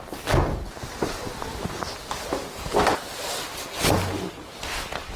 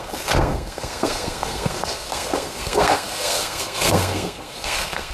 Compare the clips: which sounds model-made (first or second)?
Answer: second